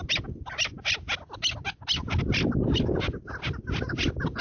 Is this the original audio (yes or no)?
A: yes